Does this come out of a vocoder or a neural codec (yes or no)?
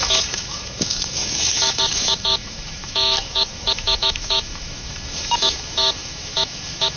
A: yes